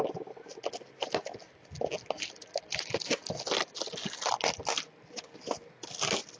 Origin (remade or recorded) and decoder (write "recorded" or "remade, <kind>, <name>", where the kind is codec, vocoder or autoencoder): recorded